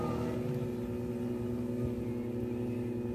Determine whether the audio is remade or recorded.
recorded